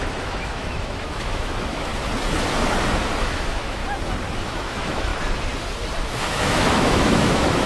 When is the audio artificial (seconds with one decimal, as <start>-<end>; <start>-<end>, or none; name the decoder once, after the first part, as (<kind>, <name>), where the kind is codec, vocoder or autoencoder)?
0.0-1.9 (autoencoder, DAC-VAE); 3.2-3.8; 4.4-5.1; 6.3-7.7